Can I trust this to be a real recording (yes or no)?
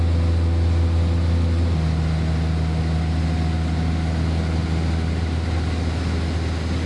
yes